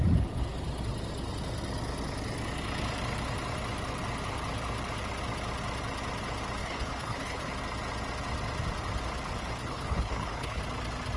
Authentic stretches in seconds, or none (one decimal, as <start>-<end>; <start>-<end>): 0.0-6.6; 7.5-9.6; 10.6-11.2